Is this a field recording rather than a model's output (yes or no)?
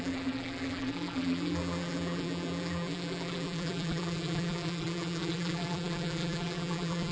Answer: no